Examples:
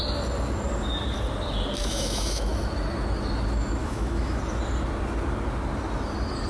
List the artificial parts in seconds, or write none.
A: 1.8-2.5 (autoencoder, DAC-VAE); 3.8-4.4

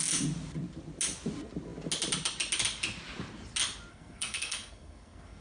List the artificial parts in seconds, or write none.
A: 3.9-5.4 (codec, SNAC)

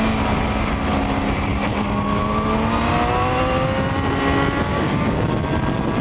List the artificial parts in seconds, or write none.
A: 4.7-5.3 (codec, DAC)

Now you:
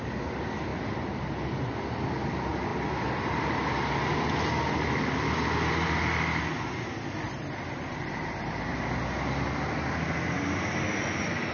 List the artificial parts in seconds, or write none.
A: none